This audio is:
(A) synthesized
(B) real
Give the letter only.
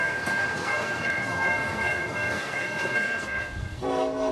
A